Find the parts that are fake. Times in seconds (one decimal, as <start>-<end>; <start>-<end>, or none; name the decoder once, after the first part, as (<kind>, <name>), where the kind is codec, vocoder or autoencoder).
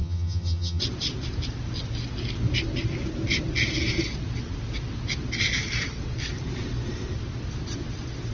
0.0-0.8 (vocoder, HiFi-GAN)